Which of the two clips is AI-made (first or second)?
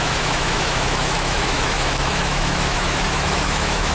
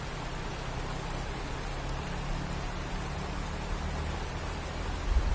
first